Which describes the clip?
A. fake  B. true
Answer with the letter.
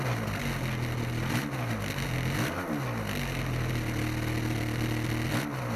B